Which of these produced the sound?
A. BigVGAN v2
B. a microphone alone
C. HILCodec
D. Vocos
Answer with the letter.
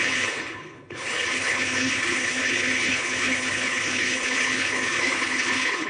C